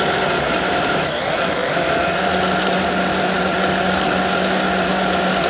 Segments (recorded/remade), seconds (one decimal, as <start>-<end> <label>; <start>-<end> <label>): 0.0-5.5 recorded